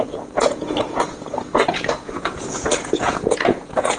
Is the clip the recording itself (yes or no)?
no